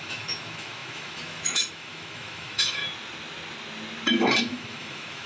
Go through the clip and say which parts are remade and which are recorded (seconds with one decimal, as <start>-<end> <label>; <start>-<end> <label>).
0.0-2.8 remade; 2.8-4.4 recorded; 4.4-5.3 remade